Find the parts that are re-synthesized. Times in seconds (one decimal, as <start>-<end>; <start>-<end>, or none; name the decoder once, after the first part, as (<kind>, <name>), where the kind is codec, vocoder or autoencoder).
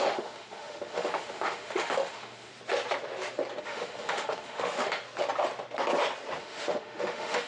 0.0-2.5 (autoencoder, DAC-VAE); 3.6-5.0; 6.4-7.5